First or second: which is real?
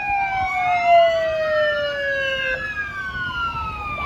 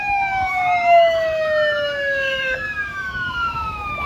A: first